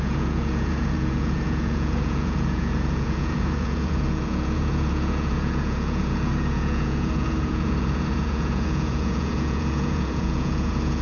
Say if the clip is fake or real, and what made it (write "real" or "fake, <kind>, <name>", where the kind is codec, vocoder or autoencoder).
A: fake, vocoder, Vocos